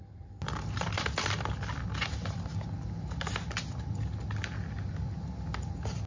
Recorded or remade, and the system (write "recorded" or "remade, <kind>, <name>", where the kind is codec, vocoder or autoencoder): recorded